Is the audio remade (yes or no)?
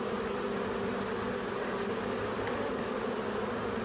no